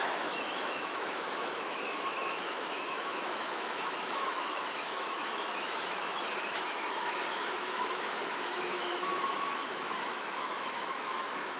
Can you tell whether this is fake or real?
fake